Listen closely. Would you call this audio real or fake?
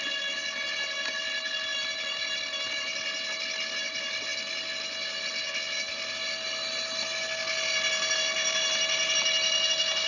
real